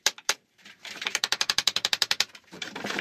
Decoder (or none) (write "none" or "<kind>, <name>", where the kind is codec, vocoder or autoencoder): vocoder, BigVGAN v2